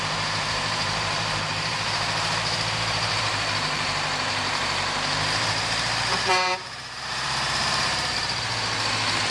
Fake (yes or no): yes